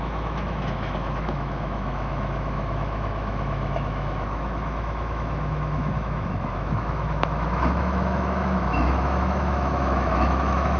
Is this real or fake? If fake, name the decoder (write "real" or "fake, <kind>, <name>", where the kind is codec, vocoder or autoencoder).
fake, autoencoder, DAC-VAE